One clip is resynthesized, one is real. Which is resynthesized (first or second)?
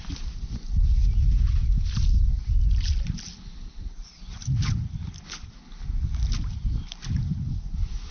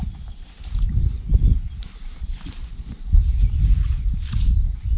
second